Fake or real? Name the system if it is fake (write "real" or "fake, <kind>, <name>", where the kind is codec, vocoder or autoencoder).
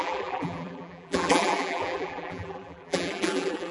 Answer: fake, vocoder, BigVGAN v2